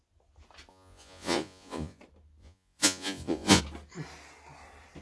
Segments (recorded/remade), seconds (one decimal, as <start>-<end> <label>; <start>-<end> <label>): 0.0-0.7 recorded; 0.7-2.0 remade; 2.0-2.4 recorded; 2.4-3.6 remade; 3.6-5.0 recorded